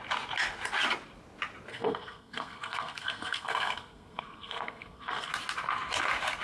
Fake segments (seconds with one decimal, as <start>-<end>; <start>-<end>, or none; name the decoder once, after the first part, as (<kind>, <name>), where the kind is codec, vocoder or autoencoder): 1.7-5.3 (codec, SNAC)

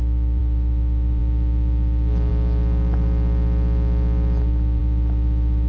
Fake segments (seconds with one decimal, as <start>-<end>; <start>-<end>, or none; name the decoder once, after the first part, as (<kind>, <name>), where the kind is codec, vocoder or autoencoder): none

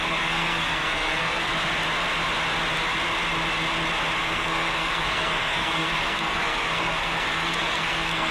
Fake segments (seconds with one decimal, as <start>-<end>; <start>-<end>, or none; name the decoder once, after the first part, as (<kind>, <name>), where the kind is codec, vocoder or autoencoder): 0.0-1.5 (codec, SNAC); 4.2-8.3

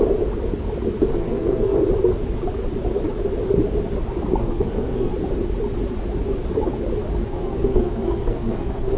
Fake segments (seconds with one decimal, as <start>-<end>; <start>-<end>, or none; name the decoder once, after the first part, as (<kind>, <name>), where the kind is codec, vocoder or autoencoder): 1.1-1.8 (codec, SNAC); 4.4-5.1; 7.2-9.0

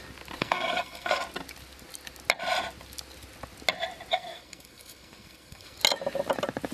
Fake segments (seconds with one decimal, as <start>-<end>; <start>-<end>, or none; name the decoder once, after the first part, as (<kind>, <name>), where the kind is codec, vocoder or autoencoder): 0.4-1.2 (codec, SNAC); 4.1-5.8

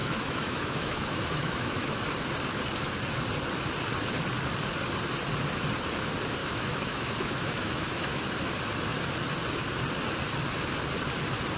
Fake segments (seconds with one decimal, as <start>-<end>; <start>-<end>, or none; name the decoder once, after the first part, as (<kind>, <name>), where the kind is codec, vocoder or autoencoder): 0.0-2.0 (autoencoder, DAC-VAE); 6.4-8.2

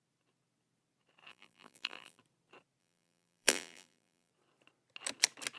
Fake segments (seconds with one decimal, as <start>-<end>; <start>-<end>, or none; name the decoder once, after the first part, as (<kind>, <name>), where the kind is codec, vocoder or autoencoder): 1.3-2.2 (vocoder, BigVGAN v2); 2.8-4.3

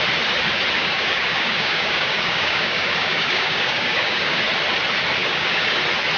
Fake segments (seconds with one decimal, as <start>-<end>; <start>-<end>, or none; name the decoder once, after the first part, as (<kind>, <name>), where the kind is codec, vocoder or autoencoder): 0.8-4.5 (codec, DAC); 5.2-5.8